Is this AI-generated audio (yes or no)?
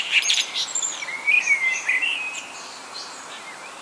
yes